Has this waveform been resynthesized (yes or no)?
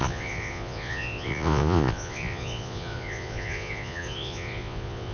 yes